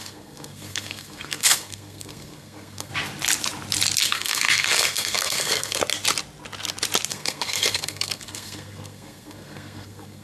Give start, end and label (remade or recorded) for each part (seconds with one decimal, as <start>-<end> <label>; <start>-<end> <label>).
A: 0.0-2.9 remade; 2.9-4.0 recorded; 4.0-5.8 remade; 5.8-7.1 recorded; 7.1-10.2 remade